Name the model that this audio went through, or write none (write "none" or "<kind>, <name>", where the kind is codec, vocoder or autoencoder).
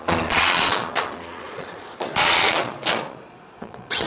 vocoder, Vocos